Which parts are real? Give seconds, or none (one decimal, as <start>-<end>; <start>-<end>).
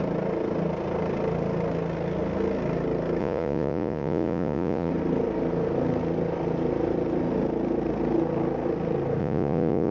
0.0-3.2; 4.9-9.2